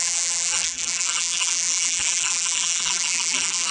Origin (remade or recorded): remade